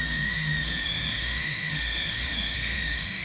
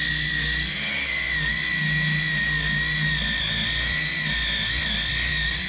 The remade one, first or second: first